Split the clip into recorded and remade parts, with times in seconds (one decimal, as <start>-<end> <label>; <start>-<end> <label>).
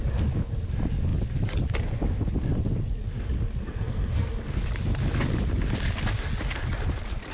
0.0-3.6 recorded; 3.6-4.3 remade; 4.3-7.3 recorded